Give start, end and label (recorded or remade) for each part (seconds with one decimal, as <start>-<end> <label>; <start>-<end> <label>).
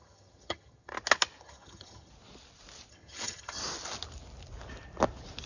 0.0-0.9 remade; 0.9-1.4 recorded; 1.4-2.1 remade; 2.1-2.9 recorded; 2.9-3.6 remade; 3.6-5.5 recorded